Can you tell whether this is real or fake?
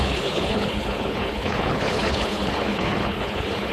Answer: fake